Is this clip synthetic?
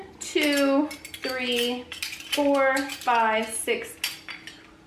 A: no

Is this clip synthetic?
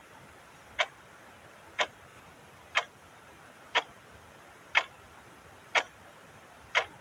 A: no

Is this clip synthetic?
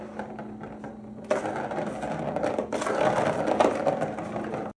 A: no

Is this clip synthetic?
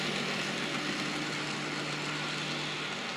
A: no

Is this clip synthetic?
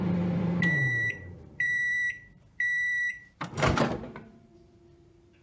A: yes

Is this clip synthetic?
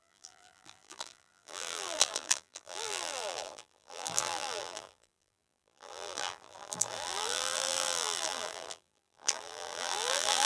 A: yes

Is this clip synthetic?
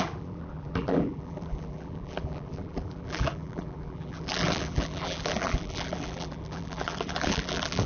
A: yes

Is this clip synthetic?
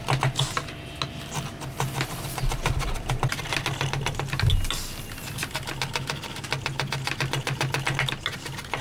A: no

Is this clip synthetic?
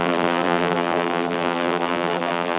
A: yes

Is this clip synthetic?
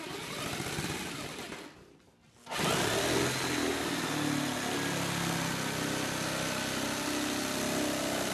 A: no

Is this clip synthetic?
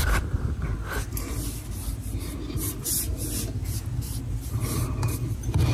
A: no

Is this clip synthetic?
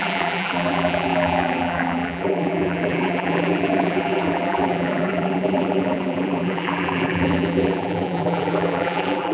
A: yes